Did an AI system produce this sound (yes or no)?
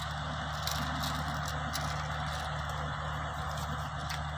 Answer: no